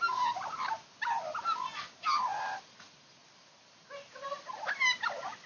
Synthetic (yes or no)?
no